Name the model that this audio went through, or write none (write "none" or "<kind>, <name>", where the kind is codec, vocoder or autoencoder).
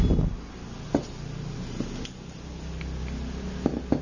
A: none